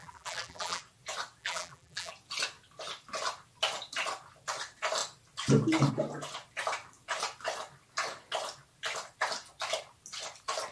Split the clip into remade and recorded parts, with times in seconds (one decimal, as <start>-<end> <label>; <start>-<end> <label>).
0.0-0.8 remade; 0.8-1.4 recorded; 1.4-2.1 remade; 2.1-10.7 recorded